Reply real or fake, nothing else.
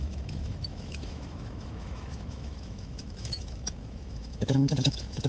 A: fake